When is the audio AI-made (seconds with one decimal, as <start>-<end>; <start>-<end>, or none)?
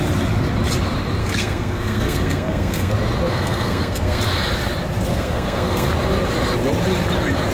1.2-2.9; 3.3-4.2; 5.1-5.9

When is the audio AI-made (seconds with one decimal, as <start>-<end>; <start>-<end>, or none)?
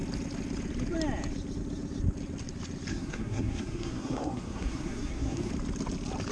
2.9-5.5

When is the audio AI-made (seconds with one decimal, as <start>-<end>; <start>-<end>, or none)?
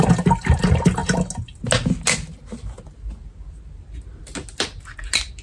none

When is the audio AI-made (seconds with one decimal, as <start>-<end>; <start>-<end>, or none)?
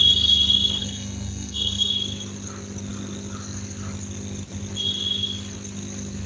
0.8-1.9